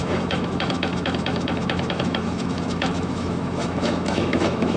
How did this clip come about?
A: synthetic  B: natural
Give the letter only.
A